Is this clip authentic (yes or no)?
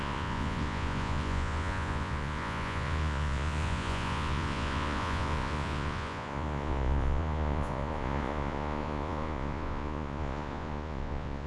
no